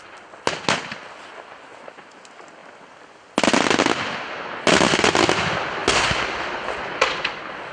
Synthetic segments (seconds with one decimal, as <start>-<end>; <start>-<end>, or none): none